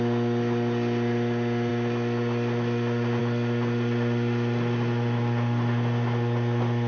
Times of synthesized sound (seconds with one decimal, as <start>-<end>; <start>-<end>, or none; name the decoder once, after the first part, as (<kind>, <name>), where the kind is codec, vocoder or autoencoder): none